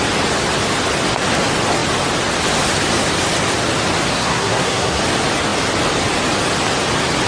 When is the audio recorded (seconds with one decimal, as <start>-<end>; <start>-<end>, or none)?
0.0-4.1; 5.0-7.3